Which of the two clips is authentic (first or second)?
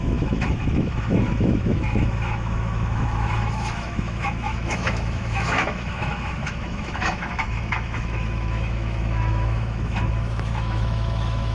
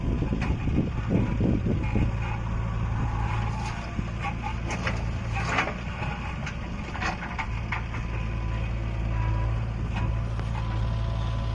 second